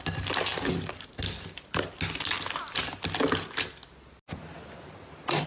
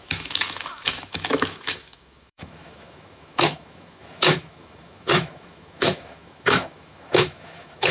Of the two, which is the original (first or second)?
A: first